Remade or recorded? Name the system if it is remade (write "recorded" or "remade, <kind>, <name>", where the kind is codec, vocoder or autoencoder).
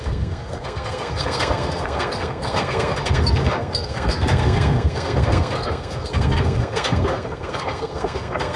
remade, codec, SNAC